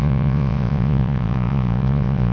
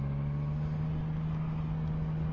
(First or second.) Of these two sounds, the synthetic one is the first